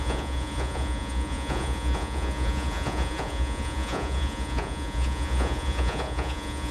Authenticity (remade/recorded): remade